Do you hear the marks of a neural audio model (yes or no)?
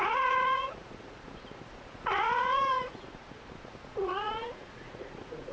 yes